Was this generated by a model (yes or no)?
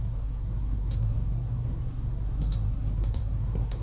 yes